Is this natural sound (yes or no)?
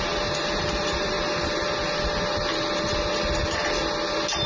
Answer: yes